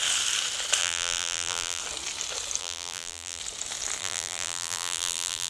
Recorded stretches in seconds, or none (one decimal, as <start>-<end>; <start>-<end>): 0.0-0.8; 1.8-2.6; 3.4-4.0